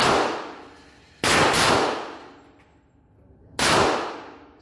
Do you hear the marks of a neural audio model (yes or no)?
no